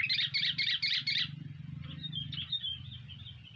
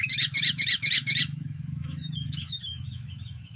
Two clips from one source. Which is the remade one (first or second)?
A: second